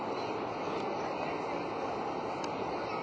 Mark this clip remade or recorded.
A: recorded